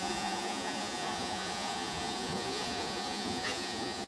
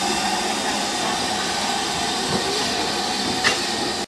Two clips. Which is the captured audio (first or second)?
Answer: second